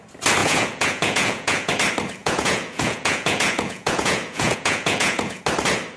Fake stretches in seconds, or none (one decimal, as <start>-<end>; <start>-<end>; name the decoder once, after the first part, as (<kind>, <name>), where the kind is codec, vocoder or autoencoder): 0.4-1.7 (vocoder, Vocos); 2.2-5.4